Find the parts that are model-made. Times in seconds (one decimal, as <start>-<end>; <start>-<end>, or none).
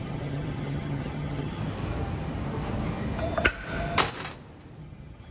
0.0-1.6; 4.8-5.3